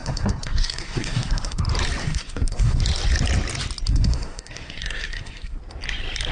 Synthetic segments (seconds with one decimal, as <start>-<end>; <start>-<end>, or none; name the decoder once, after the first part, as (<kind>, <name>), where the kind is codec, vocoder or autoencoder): 0.0-1.6 (codec, SNAC); 2.0-2.8; 3.9-5.6